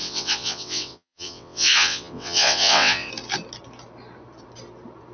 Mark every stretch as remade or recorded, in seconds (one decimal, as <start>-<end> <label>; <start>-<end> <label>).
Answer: 0.0-3.1 remade; 3.1-5.1 recorded